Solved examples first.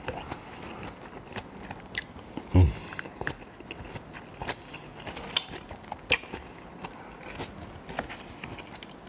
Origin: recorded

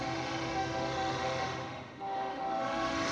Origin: remade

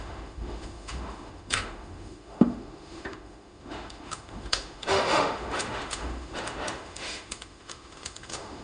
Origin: remade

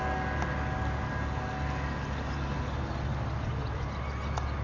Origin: recorded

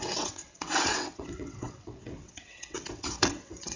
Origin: remade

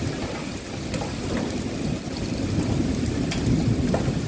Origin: recorded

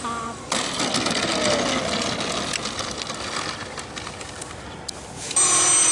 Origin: recorded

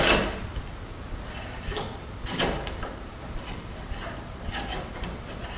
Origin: recorded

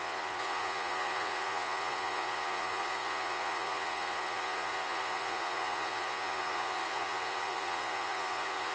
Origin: remade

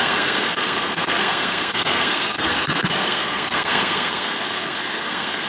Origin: remade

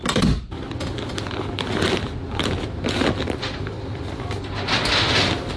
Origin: recorded